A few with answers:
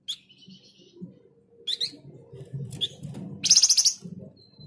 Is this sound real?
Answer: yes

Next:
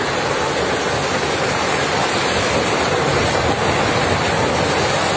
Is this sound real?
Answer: yes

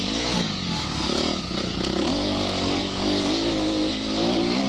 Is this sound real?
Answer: no